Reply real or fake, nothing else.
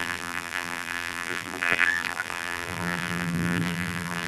fake